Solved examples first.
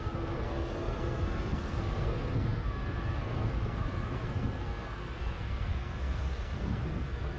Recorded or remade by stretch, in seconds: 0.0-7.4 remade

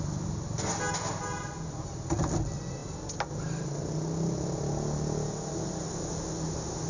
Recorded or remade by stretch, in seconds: 0.0-6.9 recorded

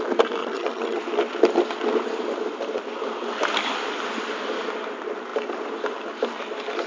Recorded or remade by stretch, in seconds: 0.0-0.4 recorded; 0.4-1.0 remade; 1.0-6.9 recorded

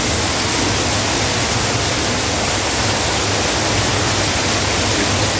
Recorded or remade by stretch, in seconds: 0.0-5.4 recorded

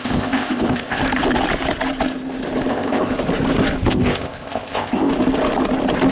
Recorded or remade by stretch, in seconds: 0.0-1.0 remade; 1.0-2.7 recorded; 2.7-3.1 remade; 3.1-3.9 recorded; 3.9-5.1 remade; 5.1-6.1 recorded

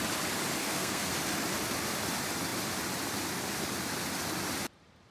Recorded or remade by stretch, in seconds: 0.0-0.6 recorded; 0.6-1.1 remade; 1.1-5.1 recorded

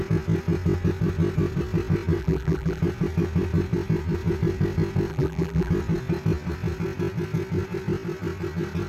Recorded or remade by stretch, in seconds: 0.0-2.2 recorded; 2.2-2.8 remade; 2.8-5.1 recorded; 5.1-5.7 remade; 5.7-8.9 recorded